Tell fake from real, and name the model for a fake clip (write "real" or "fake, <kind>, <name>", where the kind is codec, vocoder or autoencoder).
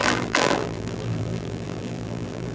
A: fake, vocoder, BigVGAN v2